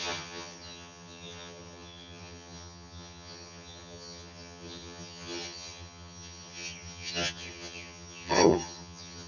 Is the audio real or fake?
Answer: fake